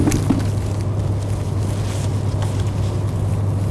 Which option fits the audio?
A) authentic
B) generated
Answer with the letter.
A